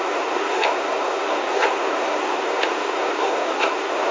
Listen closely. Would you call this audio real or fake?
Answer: fake